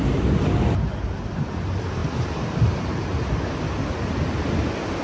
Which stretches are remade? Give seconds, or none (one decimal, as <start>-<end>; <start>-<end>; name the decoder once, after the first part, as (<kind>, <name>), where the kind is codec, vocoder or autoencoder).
none

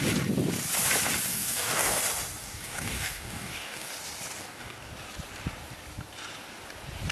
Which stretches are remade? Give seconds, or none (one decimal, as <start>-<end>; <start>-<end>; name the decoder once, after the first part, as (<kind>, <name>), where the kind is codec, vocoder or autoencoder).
1.3-2.0 (codec, DAC); 2.4-3.9; 4.4-4.9

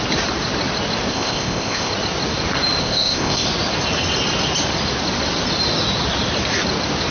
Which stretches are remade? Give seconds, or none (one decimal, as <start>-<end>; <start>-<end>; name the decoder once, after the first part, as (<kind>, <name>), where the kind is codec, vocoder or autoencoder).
1.1-1.9 (codec, ZipCodec); 2.8-3.5

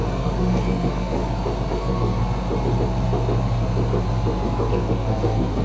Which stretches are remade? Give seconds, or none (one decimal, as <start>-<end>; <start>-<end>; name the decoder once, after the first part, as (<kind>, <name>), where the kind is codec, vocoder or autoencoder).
0.0-1.2 (codec, SNAC); 1.7-2.2; 4.7-5.6

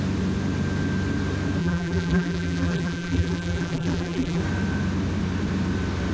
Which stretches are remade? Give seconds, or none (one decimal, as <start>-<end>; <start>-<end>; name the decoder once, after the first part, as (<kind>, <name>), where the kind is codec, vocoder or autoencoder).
1.6-4.4 (vocoder, BigVGAN v2)

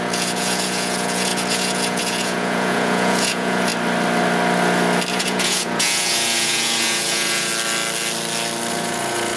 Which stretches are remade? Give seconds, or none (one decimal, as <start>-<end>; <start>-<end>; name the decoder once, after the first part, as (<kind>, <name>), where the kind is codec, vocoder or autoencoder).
0.0-3.7 (vocoder, Vocos); 5.1-7.5; 8.7-9.4

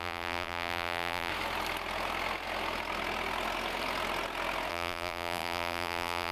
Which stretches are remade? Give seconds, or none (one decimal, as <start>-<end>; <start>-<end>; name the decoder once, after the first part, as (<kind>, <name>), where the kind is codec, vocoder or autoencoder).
0.0-1.3 (vocoder, BigVGAN v2); 4.7-6.3

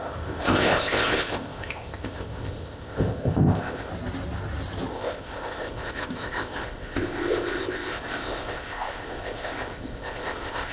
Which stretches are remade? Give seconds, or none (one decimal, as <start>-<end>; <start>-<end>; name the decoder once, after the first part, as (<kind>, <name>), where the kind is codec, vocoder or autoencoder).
0.0-3.9 (codec, ZipCodec); 4.9-10.7